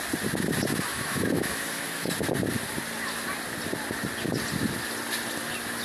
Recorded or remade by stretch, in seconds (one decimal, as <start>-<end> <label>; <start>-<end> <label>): 0.0-0.7 recorded; 0.7-2.1 remade; 2.1-5.8 recorded